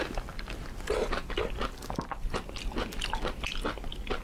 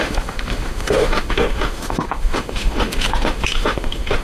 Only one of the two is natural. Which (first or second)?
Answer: first